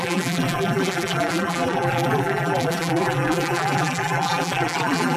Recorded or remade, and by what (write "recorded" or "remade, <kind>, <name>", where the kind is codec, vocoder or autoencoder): remade, vocoder, BigVGAN v2